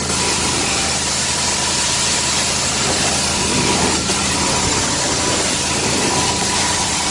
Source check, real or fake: fake